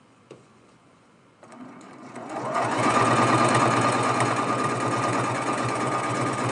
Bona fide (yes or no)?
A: no